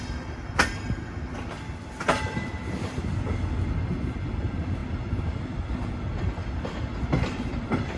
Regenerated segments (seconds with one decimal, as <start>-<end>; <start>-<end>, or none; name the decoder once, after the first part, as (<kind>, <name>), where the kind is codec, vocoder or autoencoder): none